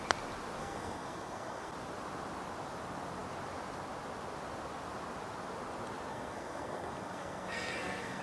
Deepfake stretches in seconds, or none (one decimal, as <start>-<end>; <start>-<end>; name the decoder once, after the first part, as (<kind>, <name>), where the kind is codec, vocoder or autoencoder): 0.6-1.7 (codec, SNAC); 6.1-8.2